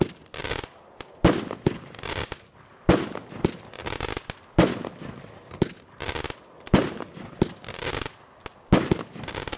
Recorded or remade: recorded